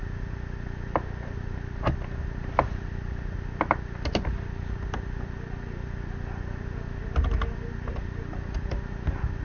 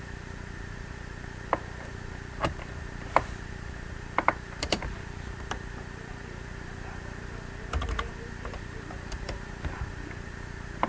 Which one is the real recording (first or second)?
first